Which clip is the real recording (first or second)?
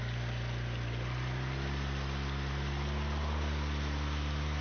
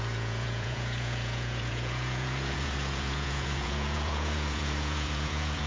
first